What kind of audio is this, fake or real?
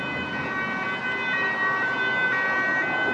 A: real